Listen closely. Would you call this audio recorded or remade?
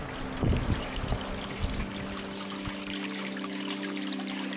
recorded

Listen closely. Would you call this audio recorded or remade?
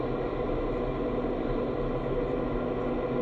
recorded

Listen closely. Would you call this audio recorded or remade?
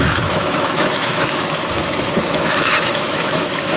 remade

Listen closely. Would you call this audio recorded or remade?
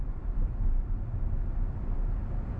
recorded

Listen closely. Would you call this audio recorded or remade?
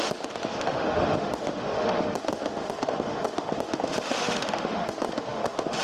remade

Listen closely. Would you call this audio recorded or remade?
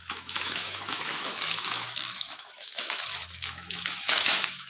remade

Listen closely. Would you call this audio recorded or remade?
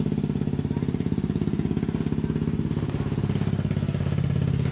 recorded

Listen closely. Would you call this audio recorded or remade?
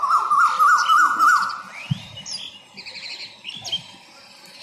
recorded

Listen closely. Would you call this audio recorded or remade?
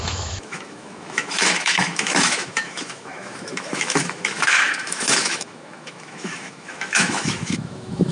remade